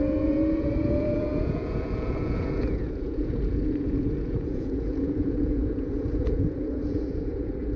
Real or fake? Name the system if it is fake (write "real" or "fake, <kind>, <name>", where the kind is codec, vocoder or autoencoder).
fake, vocoder, Vocos